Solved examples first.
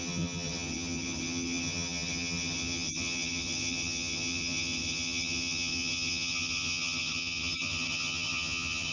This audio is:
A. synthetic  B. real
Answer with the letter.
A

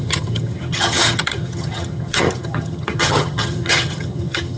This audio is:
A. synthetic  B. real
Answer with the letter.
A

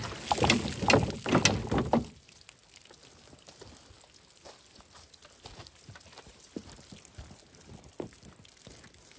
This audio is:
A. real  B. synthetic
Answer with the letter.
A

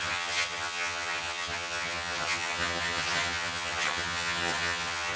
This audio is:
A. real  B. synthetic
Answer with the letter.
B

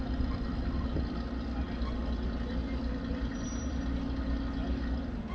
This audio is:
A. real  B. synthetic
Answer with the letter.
A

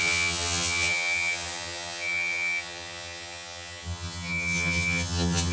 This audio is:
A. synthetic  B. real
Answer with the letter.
A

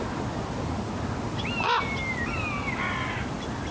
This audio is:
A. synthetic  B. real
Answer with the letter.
B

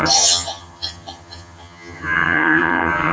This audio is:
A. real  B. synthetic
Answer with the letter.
B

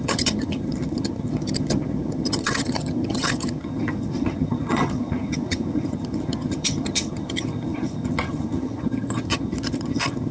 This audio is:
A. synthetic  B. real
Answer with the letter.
A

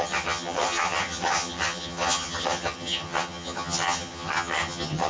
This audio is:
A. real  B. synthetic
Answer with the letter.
B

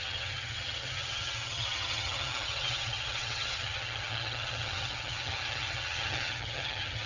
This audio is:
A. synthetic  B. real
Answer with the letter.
A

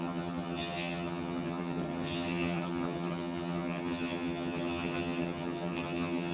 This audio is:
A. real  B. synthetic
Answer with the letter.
B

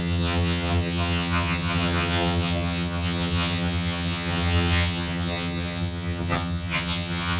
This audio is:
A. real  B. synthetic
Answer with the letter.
B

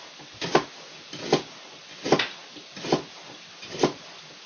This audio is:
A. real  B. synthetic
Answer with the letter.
A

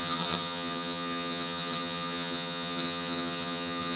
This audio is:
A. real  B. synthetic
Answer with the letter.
B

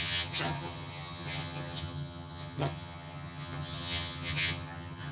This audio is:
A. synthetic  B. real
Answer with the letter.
A